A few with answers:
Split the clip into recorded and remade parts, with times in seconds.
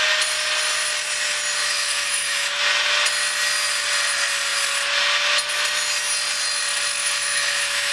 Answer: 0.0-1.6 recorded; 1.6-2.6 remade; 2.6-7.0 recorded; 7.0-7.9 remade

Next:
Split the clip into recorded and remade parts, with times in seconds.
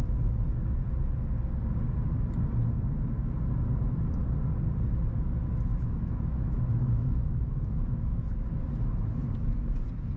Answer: 0.0-5.7 recorded; 5.7-8.6 remade; 8.6-10.2 recorded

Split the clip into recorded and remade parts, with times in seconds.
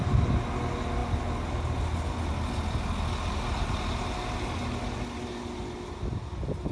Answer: 0.0-6.7 recorded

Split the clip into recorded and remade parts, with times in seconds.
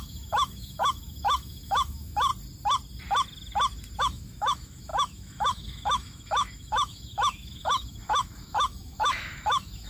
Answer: 0.0-2.3 remade; 2.3-4.0 recorded; 4.0-9.9 remade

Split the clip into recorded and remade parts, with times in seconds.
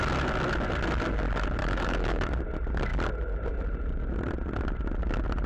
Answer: 0.0-1.6 recorded; 1.6-2.3 remade; 2.3-5.5 recorded